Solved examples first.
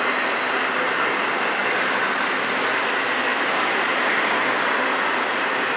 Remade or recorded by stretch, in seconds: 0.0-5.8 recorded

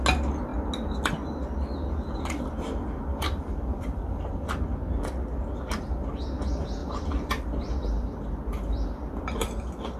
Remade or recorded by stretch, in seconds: 0.0-3.1 recorded; 3.1-4.3 remade; 4.3-6.8 recorded; 6.8-9.5 remade; 9.5-10.0 recorded

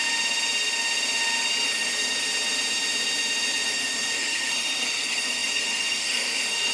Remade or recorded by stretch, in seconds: 0.0-3.7 recorded; 3.7-6.7 remade

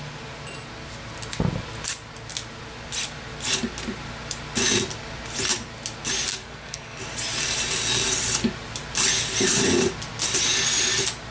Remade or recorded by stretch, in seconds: 0.0-6.3 recorded; 6.3-7.0 remade; 7.0-11.3 recorded

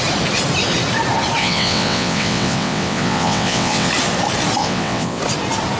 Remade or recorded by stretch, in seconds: 0.0-1.4 recorded; 1.4-3.9 remade; 3.9-4.6 recorded; 4.6-5.2 remade; 5.2-5.8 recorded